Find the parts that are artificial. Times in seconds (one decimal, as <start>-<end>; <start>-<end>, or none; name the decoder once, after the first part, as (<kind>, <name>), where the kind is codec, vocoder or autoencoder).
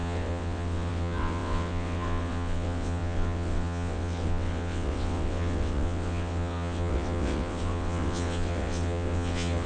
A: 0.0-9.7 (vocoder, WaveNeXt)